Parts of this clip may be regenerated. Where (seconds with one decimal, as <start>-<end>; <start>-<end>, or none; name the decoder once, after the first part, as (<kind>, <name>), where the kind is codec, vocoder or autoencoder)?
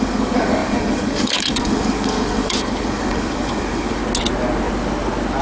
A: 0.0-4.0 (codec, DAC)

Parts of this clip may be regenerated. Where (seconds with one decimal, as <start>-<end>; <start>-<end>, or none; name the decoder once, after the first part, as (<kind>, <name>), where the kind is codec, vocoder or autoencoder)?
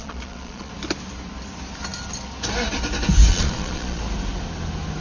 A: 0.0-0.7 (vocoder, Vocos); 3.3-4.0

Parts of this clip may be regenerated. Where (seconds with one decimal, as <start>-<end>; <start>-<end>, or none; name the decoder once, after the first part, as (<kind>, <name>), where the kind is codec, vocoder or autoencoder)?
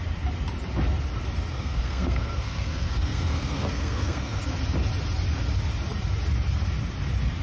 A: 1.5-4.4 (codec, SNAC)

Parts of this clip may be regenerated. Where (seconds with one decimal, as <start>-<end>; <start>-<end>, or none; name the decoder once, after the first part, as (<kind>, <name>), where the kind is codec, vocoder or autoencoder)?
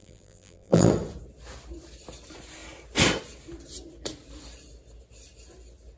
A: 0.0-0.9 (vocoder, BigVGAN v2)